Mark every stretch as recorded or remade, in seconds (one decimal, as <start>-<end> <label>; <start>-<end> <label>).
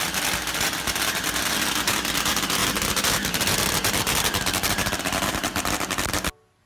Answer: 0.0-6.7 recorded